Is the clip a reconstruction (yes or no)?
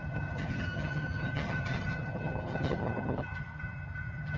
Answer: yes